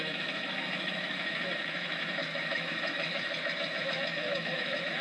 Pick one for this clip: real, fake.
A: fake